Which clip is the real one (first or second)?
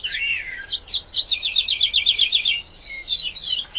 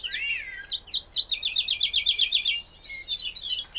second